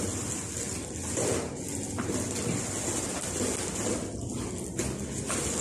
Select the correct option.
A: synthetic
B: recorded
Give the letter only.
B